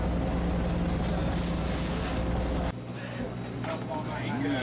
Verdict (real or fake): real